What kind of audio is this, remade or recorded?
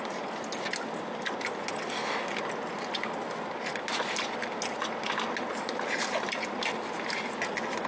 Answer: recorded